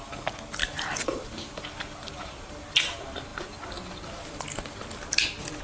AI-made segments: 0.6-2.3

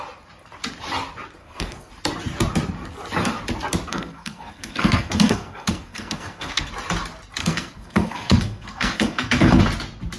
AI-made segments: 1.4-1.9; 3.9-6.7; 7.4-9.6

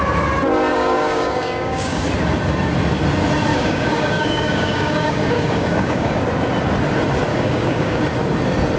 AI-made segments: 0.7-2.0; 3.5-6.2; 7.3-8.0

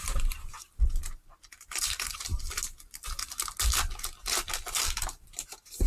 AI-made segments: 0.0-2.3; 4.8-5.9